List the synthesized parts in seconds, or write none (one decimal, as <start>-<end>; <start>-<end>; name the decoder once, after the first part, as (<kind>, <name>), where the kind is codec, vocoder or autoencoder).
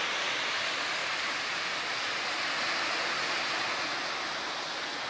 1.0-1.6 (vocoder, BigVGAN v2)